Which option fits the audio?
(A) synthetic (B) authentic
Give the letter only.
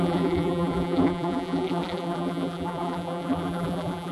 A